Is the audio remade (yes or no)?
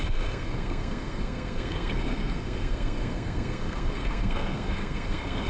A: yes